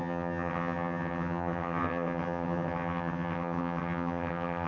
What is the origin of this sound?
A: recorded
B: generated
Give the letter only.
B